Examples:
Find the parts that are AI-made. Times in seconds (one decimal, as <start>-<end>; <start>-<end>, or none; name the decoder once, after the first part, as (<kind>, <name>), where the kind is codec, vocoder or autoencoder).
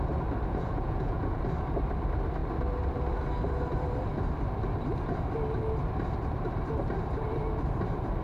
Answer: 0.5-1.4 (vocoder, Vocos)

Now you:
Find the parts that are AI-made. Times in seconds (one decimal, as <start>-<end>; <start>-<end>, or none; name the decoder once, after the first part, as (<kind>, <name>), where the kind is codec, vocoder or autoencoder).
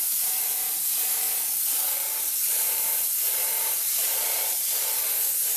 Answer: 0.0-0.7 (vocoder, BigVGAN v2); 2.4-4.7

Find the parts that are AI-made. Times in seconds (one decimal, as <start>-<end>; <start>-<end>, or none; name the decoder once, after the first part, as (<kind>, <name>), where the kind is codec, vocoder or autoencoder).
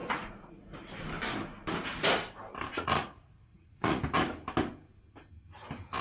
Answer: 0.0-0.5 (vocoder, Vocos); 2.7-4.0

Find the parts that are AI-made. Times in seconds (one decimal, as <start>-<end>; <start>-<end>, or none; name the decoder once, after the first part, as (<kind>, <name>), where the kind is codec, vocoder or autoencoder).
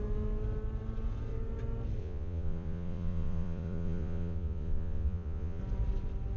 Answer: 2.0-5.6 (vocoder, Vocos)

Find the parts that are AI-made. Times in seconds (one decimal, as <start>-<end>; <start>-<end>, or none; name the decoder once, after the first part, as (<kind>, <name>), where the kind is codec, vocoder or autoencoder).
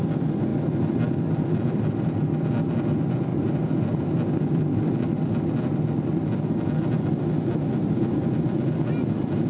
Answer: none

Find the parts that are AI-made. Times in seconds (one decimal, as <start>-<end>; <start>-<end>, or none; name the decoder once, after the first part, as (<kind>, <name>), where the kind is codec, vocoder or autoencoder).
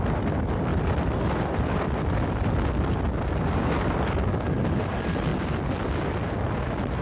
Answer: none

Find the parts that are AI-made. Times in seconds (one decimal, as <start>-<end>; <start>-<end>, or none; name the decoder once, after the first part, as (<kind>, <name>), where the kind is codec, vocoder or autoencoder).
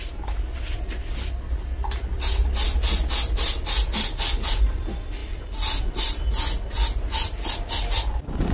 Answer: none